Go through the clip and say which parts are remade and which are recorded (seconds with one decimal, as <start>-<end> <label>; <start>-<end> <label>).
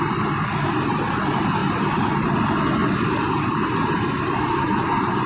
0.0-1.6 recorded; 1.6-2.3 remade; 2.3-2.8 recorded; 2.8-5.3 remade